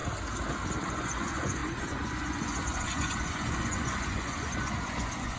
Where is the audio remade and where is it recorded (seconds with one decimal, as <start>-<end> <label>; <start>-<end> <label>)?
0.0-0.9 recorded; 0.9-5.4 remade